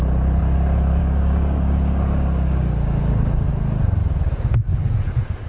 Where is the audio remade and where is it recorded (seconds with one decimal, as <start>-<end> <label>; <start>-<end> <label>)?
0.0-1.0 recorded; 1.0-3.5 remade; 3.5-4.0 recorded; 4.0-4.8 remade; 4.8-5.5 recorded